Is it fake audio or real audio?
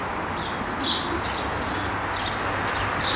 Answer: real